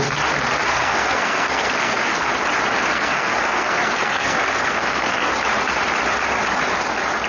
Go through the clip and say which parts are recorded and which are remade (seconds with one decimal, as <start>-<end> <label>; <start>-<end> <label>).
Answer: 0.0-0.7 recorded; 0.7-2.3 remade; 2.3-2.9 recorded; 2.9-5.3 remade; 5.3-7.3 recorded